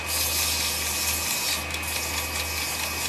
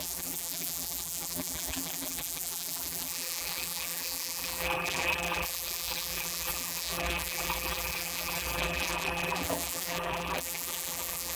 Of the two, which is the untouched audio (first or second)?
first